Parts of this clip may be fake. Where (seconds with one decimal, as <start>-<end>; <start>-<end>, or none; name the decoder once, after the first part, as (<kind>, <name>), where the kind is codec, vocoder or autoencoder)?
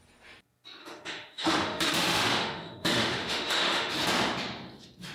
0.8-3.9 (autoencoder, DAC-VAE)